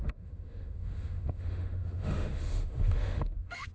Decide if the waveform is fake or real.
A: fake